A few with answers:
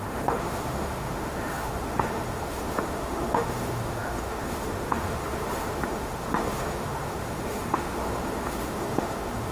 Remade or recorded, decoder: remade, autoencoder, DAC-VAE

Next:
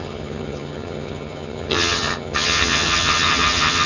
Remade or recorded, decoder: remade, vocoder, HiFi-GAN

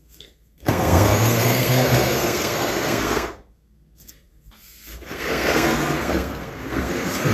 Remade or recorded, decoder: remade, codec, SNAC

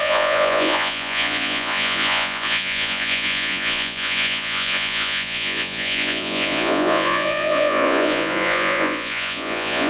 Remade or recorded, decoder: remade, vocoder, Vocos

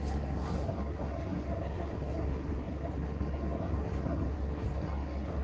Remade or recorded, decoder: remade, codec, SNAC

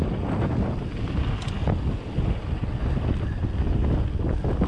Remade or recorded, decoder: recorded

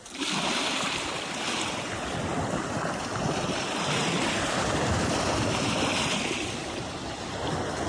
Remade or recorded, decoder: remade, vocoder, BigVGAN v2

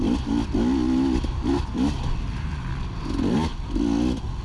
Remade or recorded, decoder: recorded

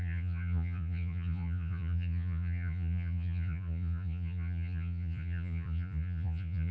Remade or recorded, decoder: remade, vocoder, Vocos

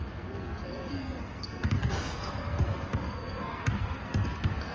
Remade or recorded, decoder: remade, codec, SNAC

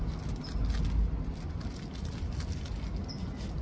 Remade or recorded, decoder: recorded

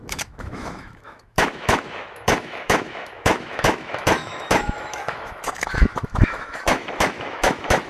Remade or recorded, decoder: remade, autoencoder, DAC-VAE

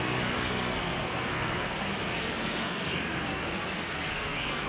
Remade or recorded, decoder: remade, codec, SNAC